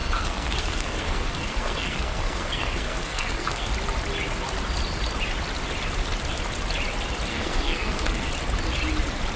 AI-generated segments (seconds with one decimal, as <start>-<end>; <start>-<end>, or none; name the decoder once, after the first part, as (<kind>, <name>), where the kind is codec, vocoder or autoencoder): 0.0-3.7 (codec, SNAC); 7.3-8.3